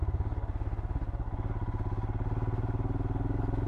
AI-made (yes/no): no